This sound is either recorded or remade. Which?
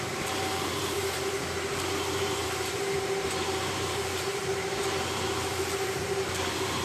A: remade